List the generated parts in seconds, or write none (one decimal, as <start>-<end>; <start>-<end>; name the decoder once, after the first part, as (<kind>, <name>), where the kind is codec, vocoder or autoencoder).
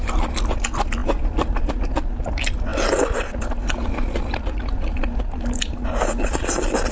0.0-6.9 (vocoder, BigVGAN v2)